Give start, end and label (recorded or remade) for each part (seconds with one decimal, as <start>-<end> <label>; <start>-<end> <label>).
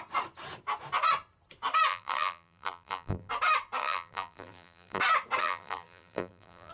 0.0-1.9 recorded; 1.9-3.3 remade; 3.3-3.8 recorded; 3.8-5.0 remade; 5.0-5.4 recorded; 5.4-6.7 remade